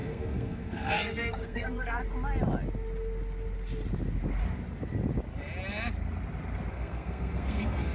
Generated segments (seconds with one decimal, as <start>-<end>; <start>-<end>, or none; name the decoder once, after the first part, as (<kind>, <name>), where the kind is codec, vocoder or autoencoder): 0.0-2.0 (codec, SNAC); 6.7-7.9